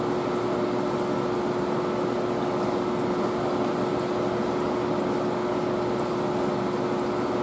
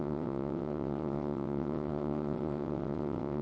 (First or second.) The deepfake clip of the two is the second